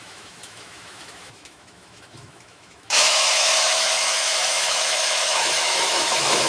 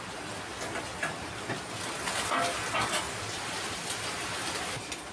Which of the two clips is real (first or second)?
second